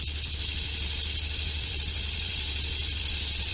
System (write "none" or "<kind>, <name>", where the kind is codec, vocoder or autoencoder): vocoder, BigVGAN v2